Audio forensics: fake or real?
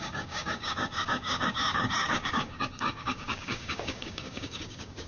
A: fake